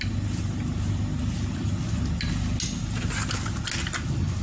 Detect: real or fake real